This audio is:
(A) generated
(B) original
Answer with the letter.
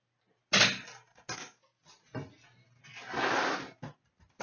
B